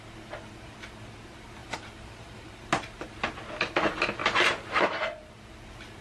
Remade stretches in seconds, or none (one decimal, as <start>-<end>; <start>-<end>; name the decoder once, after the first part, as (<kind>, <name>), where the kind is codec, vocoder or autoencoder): 1.6-2.7 (vocoder, BigVGAN v2); 4.2-5.3